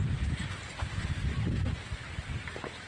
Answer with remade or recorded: recorded